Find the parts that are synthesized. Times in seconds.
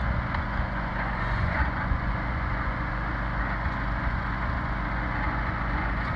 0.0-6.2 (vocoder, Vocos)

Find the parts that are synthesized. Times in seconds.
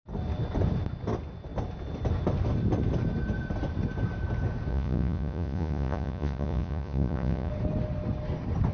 4.7-7.5 (vocoder, Vocos)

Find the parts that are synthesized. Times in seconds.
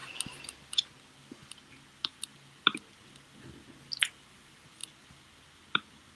none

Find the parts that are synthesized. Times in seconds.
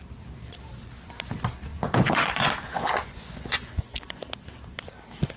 1.7-4.2 (vocoder, Vocos)